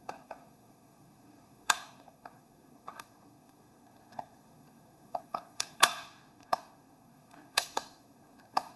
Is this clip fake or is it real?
fake